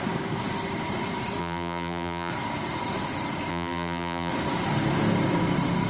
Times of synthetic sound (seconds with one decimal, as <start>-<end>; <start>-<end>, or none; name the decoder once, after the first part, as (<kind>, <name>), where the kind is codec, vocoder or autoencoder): 1.4-2.3 (vocoder, BigVGAN v2); 3.5-4.3

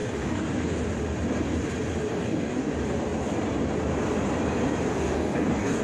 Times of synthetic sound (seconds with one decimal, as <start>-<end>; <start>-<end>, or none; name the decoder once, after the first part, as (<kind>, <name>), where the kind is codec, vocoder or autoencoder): 0.0-0.9 (codec, DAC); 2.1-2.7; 4.9-5.8

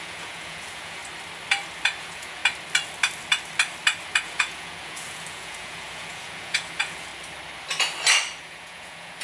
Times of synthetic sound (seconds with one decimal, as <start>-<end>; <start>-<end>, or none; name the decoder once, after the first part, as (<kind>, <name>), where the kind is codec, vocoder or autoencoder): 0.0-1.0 (vocoder, Vocos); 2.0-2.4; 4.2-7.1; 8.4-9.2